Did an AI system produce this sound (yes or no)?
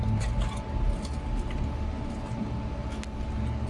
no